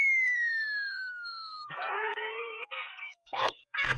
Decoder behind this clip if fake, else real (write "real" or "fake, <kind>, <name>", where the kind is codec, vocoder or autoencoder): fake, codec, SNAC